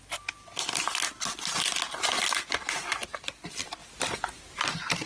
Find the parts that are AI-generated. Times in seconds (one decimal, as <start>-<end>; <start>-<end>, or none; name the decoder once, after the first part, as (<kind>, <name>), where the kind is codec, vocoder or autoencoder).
none